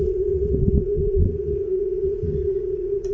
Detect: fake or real fake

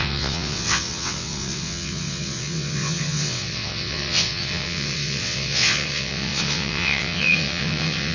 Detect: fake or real fake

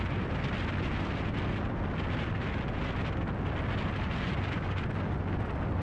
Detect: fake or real real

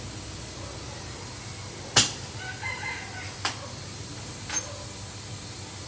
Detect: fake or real real